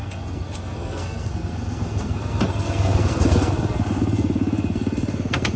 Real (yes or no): no